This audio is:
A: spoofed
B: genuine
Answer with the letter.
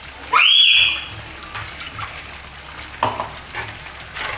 B